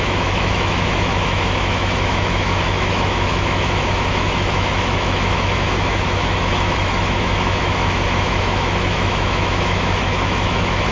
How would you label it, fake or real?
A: fake